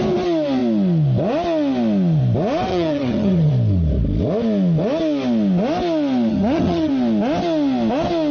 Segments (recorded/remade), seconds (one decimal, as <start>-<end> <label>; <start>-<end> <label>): 0.0-2.7 recorded; 2.7-3.5 remade; 3.5-6.3 recorded; 6.3-6.9 remade; 6.9-8.3 recorded